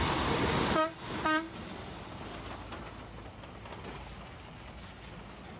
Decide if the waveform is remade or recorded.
recorded